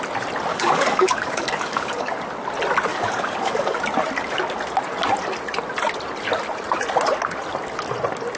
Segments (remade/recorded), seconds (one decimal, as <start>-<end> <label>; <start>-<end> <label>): 0.0-0.5 recorded; 0.5-2.2 remade; 2.2-2.9 recorded; 2.9-3.8 remade; 3.8-8.4 recorded